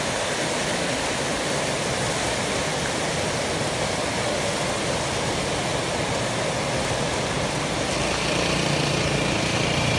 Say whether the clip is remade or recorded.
recorded